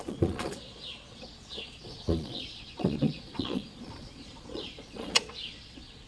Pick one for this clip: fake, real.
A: fake